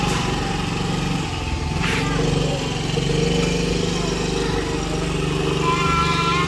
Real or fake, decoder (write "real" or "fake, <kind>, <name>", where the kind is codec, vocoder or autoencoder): real